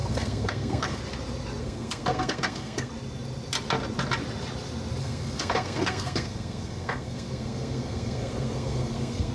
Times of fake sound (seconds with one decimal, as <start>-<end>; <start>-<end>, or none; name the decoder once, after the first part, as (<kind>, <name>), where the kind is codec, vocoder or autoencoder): 0.0-1.0 (codec, SNAC); 1.6-2.9; 5.0-9.3